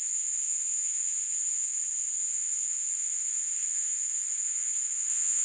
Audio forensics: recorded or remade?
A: remade